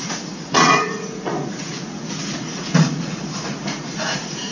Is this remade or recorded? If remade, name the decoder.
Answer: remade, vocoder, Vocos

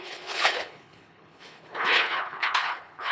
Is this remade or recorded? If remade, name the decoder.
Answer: remade, codec, HILCodec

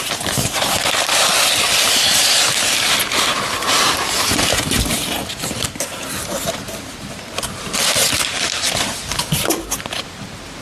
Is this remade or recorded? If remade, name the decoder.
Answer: remade, vocoder, BigVGAN v2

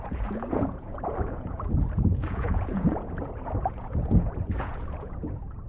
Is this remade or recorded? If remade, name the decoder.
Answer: remade, vocoder, Vocos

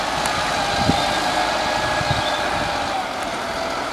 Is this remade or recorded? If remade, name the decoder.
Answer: recorded